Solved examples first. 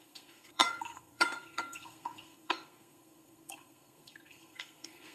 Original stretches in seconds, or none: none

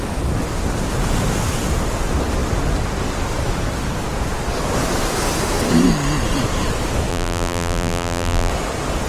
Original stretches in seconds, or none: 0.0-7.1; 8.5-9.1

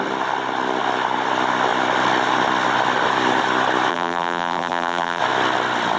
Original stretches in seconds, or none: 0.0-3.9; 5.2-6.0

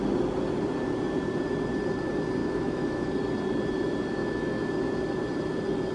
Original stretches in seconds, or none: 0.0-2.4; 3.1-4.2; 4.7-5.9

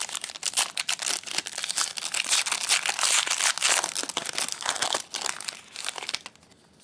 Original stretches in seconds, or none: 0.0-6.8